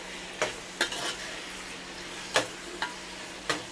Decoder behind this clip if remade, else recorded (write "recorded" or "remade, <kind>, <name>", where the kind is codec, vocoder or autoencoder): recorded